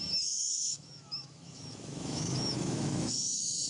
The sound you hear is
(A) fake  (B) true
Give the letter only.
A